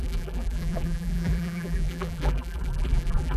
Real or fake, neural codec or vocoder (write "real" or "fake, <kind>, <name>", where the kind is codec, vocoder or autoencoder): fake, vocoder, BigVGAN v2